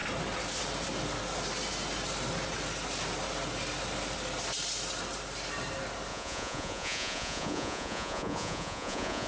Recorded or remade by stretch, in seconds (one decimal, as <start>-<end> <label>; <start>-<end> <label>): 0.0-6.1 recorded; 6.1-9.3 remade